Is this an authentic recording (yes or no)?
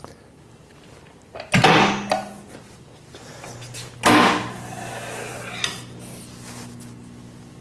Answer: yes